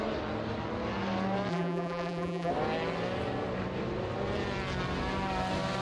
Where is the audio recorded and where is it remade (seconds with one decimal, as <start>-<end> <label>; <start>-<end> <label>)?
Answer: 0.0-1.5 recorded; 1.5-2.5 remade; 2.5-5.8 recorded